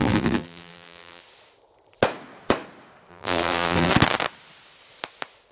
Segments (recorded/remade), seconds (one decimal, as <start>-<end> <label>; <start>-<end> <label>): 0.0-1.2 remade; 1.2-3.1 recorded; 3.1-3.9 remade; 3.9-5.5 recorded